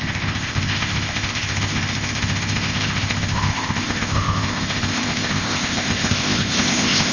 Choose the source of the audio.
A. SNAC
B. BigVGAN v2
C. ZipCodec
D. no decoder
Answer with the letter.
C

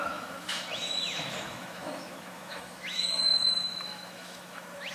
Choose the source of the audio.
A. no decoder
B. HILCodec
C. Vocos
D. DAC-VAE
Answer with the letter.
D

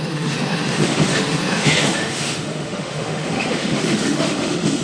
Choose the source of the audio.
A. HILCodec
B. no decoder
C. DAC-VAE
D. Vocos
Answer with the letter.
C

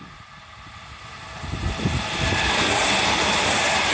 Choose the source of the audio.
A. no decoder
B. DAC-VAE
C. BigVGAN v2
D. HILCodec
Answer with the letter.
C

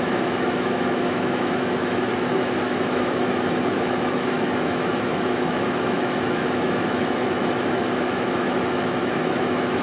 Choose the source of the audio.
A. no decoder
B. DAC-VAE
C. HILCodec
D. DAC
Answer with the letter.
B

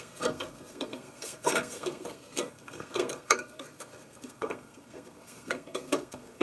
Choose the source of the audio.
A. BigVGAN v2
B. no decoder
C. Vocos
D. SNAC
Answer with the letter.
D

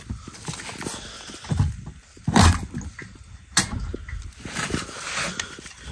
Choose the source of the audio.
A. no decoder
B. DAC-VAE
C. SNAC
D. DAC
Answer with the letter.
A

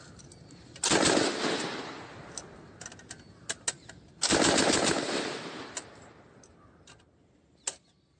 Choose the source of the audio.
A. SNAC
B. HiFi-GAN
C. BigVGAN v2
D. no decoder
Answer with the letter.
D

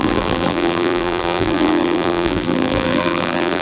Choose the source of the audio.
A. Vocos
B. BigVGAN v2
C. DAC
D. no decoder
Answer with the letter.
B